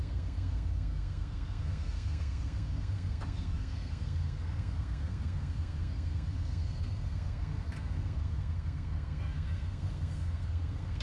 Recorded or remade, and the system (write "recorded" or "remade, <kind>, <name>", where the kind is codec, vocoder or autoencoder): remade, codec, SNAC